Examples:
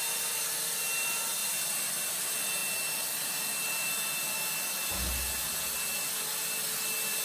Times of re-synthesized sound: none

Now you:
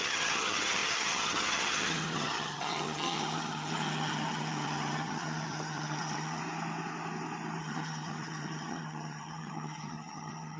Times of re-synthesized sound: 0.0-6.4; 7.6-10.6

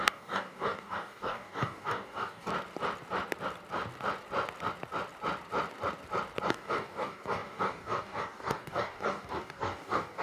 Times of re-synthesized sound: 0.0-2.5; 6.5-10.2